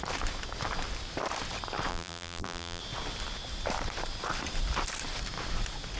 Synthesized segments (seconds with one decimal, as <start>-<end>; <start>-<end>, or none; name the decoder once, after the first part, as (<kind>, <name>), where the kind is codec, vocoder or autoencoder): 1.9-2.8 (vocoder, BigVGAN v2)